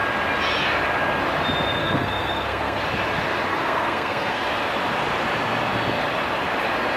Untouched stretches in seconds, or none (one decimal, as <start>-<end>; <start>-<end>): 0.0-1.8; 2.8-3.5; 4.5-7.0